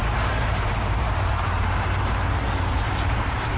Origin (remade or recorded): remade